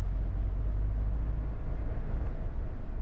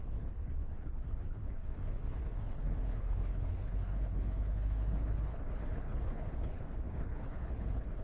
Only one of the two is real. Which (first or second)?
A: first